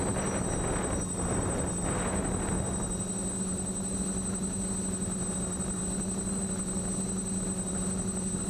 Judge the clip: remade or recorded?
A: recorded